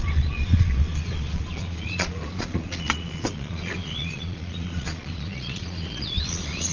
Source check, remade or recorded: remade